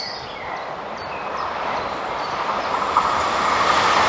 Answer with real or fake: real